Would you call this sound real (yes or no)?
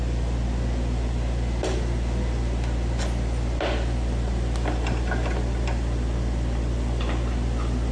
yes